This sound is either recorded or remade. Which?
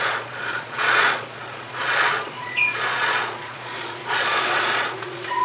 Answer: remade